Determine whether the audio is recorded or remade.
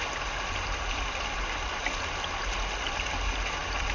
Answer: recorded